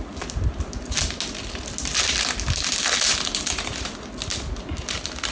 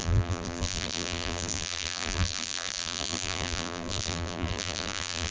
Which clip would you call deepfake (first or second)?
second